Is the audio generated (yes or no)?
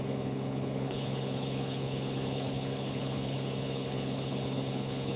yes